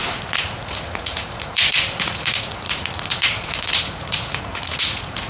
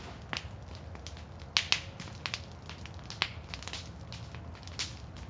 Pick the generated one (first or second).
first